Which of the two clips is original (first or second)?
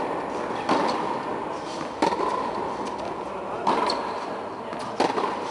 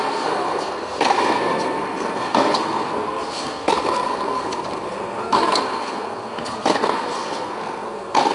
first